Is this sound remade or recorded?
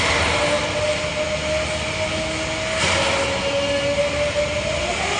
recorded